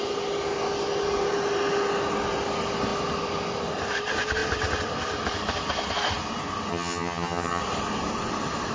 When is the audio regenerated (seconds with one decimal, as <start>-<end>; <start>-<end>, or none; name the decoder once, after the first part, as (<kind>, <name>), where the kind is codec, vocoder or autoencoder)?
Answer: 6.7-7.6 (vocoder, HiFi-GAN)